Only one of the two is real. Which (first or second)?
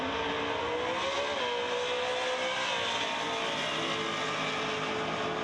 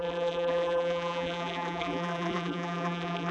first